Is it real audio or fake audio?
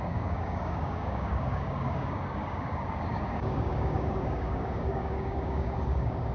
fake